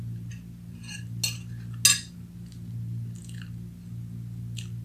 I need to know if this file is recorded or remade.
recorded